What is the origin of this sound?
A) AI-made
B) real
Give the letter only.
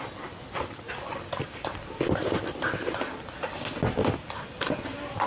B